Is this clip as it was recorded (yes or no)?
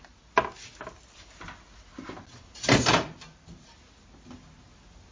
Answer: yes